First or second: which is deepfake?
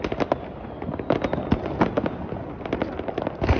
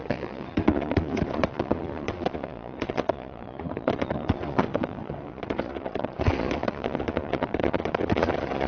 second